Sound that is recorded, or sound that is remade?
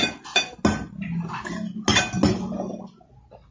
recorded